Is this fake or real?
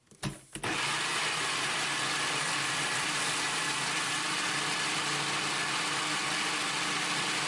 real